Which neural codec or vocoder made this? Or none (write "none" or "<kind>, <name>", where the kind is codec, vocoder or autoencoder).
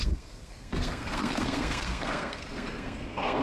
codec, SNAC